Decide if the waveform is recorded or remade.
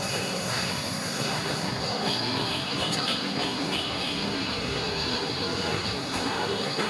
remade